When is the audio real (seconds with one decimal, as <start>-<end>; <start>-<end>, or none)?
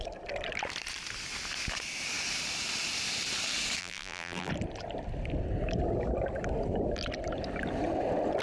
0.0-3.8; 4.5-8.4